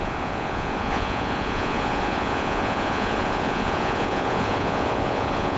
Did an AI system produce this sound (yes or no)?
yes